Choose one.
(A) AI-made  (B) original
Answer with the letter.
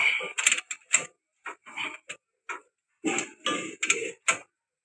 B